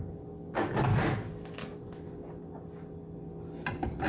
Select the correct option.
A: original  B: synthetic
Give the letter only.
A